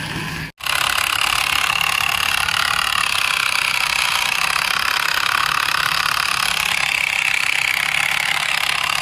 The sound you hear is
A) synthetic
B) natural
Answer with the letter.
B